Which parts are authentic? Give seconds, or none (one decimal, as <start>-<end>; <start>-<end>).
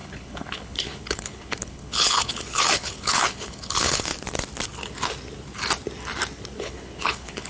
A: 4.1-6.6